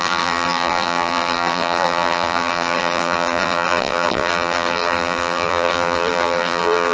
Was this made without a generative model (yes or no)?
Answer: no